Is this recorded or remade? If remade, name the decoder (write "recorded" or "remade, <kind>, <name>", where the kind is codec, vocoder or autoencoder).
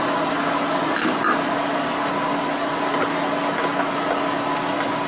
recorded